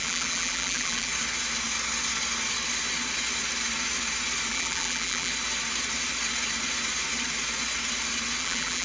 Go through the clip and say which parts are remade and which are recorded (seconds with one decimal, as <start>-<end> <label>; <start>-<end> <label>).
0.0-1.1 remade; 1.1-4.5 recorded; 4.5-5.3 remade; 5.3-8.4 recorded; 8.4-8.8 remade

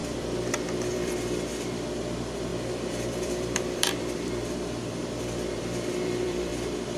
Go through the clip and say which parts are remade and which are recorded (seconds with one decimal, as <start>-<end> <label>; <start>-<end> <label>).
0.0-1.1 remade; 1.1-2.5 recorded; 2.5-6.5 remade; 6.5-7.0 recorded

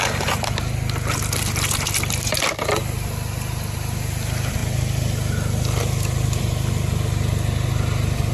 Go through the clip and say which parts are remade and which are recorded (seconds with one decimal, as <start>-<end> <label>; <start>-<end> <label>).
0.0-8.3 recorded

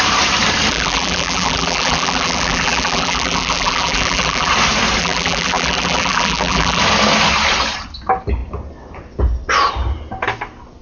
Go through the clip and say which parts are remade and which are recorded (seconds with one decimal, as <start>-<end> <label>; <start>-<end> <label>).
0.0-0.7 recorded; 0.7-4.5 remade; 4.5-5.0 recorded; 5.0-6.8 remade; 6.8-10.8 recorded

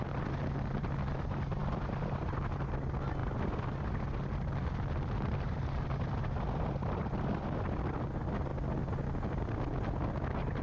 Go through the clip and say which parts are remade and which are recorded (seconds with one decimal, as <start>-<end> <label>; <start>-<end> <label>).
0.0-10.6 recorded

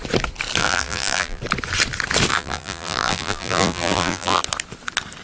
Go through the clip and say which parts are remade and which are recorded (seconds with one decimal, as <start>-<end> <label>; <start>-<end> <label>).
0.0-0.6 recorded; 0.6-1.4 remade; 1.4-2.3 recorded; 2.3-4.4 remade; 4.4-5.2 recorded

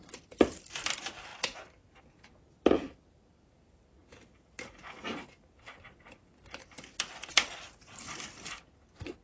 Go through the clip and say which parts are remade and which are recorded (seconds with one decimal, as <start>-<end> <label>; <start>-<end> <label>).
0.0-1.3 remade; 1.3-2.0 recorded; 2.0-4.0 remade; 4.0-5.7 recorded; 5.7-9.2 remade